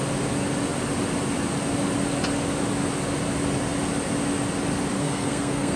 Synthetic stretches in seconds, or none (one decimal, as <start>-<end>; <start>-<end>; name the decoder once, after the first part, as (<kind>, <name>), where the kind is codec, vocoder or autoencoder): 5.0-5.8 (codec, SNAC)